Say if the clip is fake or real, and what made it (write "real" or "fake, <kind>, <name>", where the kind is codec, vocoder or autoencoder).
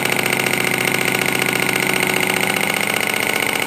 real